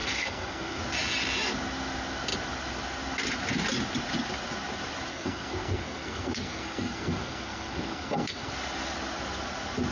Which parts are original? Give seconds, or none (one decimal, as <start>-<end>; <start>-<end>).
0.8-5.1; 8.5-9.9